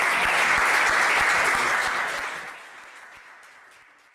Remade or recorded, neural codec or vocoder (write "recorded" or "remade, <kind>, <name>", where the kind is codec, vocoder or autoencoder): recorded